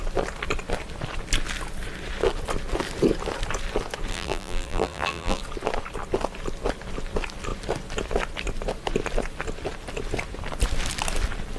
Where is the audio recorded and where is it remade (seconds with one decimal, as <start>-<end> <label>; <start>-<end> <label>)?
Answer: 0.0-4.1 recorded; 4.1-5.4 remade; 5.4-11.6 recorded